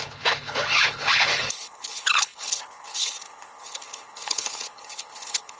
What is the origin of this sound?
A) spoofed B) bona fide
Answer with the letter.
A